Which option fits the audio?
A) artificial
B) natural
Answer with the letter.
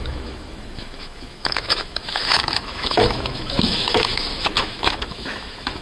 A